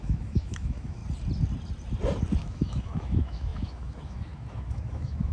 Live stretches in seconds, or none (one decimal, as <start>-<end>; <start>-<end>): 1.0-2.4